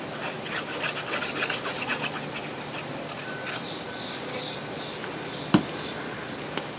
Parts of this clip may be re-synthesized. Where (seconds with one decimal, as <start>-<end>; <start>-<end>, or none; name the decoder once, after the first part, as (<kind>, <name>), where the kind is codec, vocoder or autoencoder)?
none